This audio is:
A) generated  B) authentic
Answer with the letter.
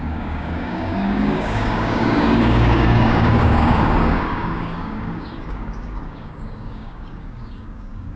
A